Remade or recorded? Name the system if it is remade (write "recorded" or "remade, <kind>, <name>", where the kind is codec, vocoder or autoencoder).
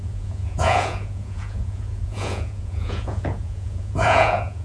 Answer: remade, vocoder, Vocos